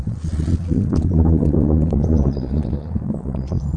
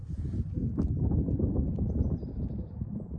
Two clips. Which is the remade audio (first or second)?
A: first